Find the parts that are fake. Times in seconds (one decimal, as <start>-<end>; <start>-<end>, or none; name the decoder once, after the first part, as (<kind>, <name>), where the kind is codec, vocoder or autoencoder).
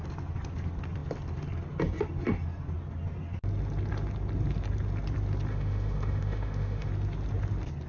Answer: 5.5-6.9 (autoencoder, DAC-VAE)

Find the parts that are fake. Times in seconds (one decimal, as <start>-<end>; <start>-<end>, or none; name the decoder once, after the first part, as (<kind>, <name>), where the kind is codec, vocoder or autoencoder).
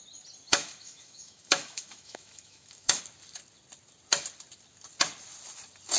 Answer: 0.5-3.0 (autoencoder, DAC-VAE)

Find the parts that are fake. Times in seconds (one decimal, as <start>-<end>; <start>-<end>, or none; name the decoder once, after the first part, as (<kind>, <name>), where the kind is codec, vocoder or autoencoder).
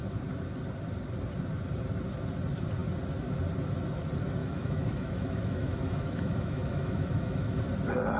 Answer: 4.4-7.6 (autoencoder, DAC-VAE)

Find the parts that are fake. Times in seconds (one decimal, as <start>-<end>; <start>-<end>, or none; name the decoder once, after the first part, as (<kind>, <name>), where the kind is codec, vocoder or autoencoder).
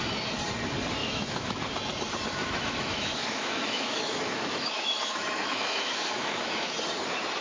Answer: 1.0-1.6 (autoencoder, DAC-VAE); 2.4-6.7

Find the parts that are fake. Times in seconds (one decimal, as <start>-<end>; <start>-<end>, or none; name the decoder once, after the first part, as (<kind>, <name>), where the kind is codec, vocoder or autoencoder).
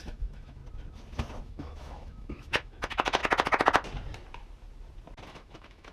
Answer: 0.0-0.6 (autoencoder, DAC-VAE); 1.4-3.2; 5.3-5.9